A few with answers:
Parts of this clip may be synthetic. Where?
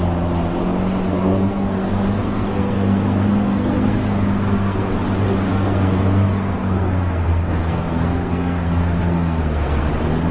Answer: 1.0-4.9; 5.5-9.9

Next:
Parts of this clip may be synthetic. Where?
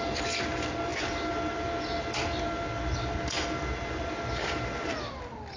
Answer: none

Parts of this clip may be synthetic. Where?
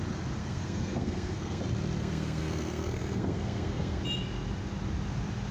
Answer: 0.4-1.6; 2.0-4.0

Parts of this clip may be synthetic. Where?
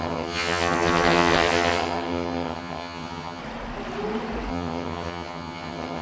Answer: 0.0-3.4; 4.5-6.0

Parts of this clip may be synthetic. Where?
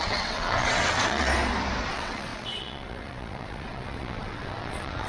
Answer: 0.0-1.3; 1.9-5.1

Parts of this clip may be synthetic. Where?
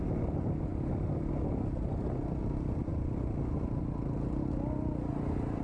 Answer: 5.1-5.6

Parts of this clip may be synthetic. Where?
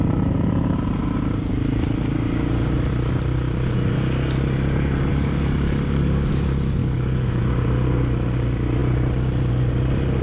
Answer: 5.1-6.3; 6.8-7.4